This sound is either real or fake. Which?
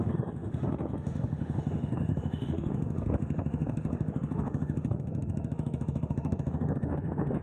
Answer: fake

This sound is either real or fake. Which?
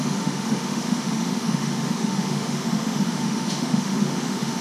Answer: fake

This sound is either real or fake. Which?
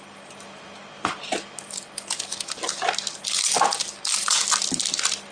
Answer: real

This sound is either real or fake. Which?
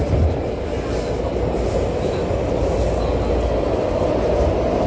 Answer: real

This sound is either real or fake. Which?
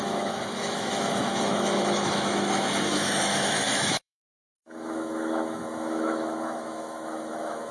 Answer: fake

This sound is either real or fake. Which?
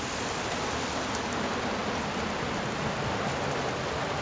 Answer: real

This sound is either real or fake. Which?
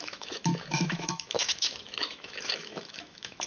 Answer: fake